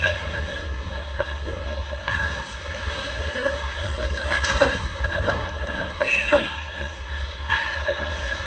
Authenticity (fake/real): fake